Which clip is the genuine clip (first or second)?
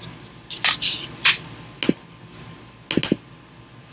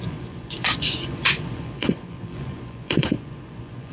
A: first